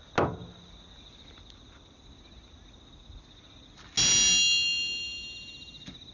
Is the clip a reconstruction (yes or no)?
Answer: no